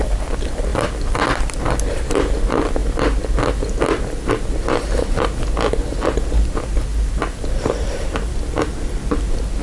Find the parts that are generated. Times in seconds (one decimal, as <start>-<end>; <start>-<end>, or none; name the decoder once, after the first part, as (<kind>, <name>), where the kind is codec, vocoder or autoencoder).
0.7-2.3 (vocoder, BigVGAN v2); 6.9-9.1